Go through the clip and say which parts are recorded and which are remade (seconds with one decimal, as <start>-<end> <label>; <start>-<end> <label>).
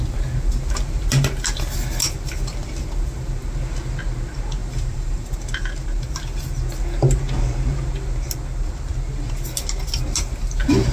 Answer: 0.0-4.6 recorded; 4.6-5.3 remade; 5.3-10.9 recorded